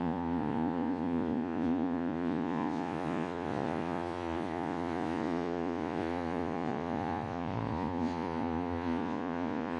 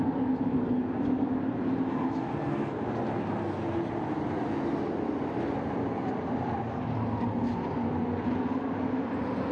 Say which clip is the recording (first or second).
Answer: second